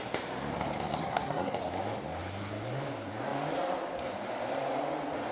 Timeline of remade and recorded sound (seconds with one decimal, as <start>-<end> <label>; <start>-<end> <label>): 0.0-1.0 recorded; 1.0-1.6 remade; 1.6-5.3 recorded